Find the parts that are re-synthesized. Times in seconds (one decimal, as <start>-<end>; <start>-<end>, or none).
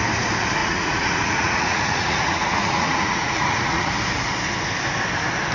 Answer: 0.6-3.9